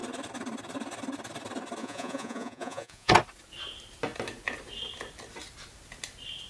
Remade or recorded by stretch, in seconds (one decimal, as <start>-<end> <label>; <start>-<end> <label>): 0.0-1.8 recorded; 1.8-3.1 remade; 3.1-6.5 recorded